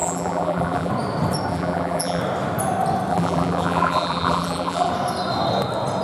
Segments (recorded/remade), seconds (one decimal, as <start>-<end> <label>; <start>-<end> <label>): 0.0-0.9 remade; 0.9-1.5 recorded; 1.5-2.2 remade; 2.2-3.1 recorded; 3.1-4.9 remade; 4.9-6.0 recorded